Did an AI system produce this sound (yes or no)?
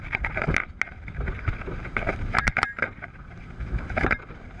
no